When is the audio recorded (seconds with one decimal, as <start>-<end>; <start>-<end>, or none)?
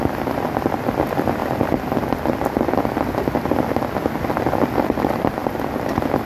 0.0-6.3